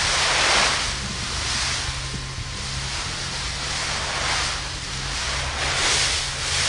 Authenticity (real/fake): real